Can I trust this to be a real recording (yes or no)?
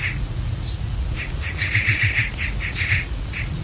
no